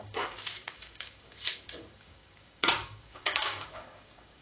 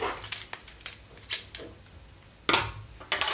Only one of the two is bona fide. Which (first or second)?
second